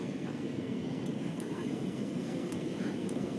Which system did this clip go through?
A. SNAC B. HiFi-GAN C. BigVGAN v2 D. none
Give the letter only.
A